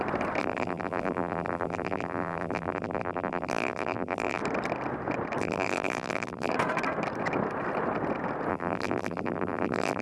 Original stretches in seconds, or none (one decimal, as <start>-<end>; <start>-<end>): 0.0-0.4; 4.4-5.4; 6.5-8.5

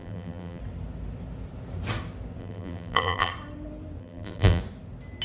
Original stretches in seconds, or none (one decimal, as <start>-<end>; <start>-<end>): 0.6-2.4; 3.3-4.0; 4.6-5.2